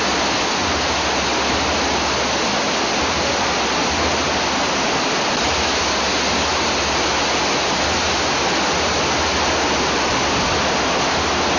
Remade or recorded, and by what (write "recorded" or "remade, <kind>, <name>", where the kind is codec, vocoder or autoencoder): recorded